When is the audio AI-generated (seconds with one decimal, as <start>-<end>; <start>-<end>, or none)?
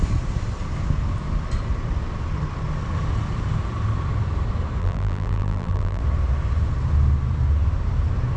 4.8-6.0